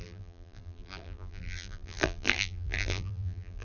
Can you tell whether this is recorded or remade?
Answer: remade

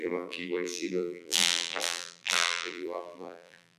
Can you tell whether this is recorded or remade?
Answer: remade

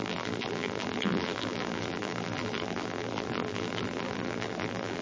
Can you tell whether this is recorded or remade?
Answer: remade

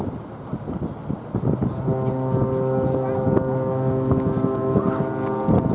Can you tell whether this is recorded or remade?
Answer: recorded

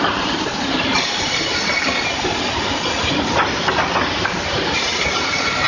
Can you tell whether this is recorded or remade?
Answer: remade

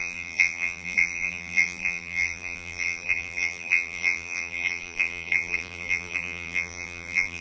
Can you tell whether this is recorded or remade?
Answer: remade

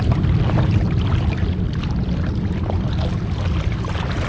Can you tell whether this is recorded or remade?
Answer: recorded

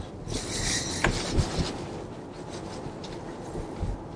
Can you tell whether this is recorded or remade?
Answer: recorded